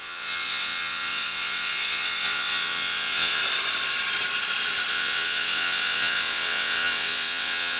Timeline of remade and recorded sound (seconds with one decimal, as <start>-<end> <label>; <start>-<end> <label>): 0.0-3.4 remade; 3.4-4.9 recorded; 4.9-7.8 remade